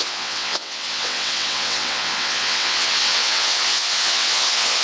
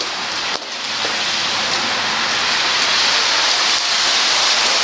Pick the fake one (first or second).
first